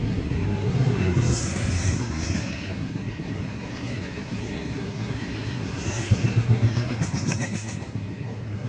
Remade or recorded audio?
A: remade